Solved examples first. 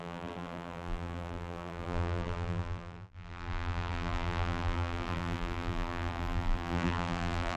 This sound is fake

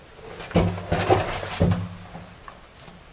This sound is real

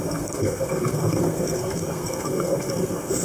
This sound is fake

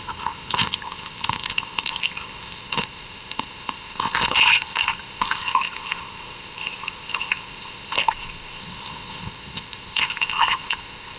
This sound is fake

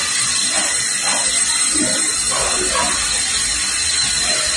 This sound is real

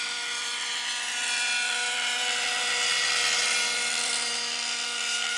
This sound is fake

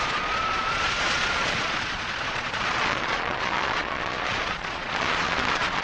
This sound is fake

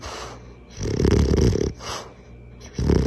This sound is real